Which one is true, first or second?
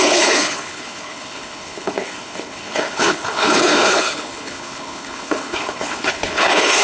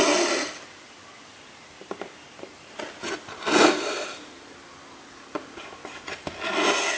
second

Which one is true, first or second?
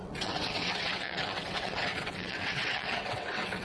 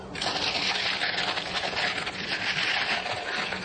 second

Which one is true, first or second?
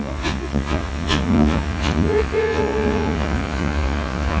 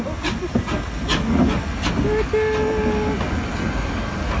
second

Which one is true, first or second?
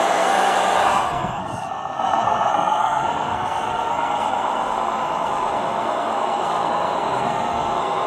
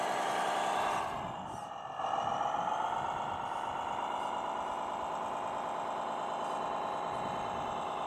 second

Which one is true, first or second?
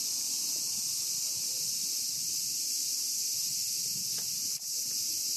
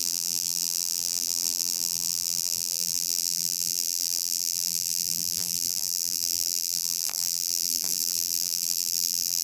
first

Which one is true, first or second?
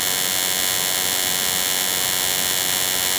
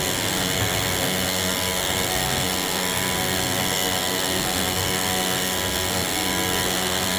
first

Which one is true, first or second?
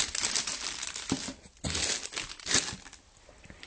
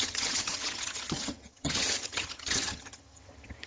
first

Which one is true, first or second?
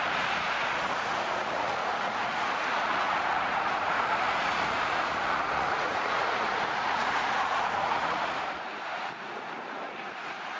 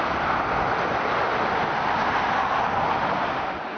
second